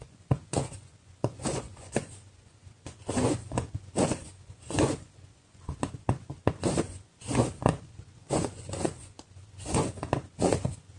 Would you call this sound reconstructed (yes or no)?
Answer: yes